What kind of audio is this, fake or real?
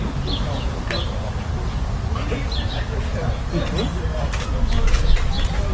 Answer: real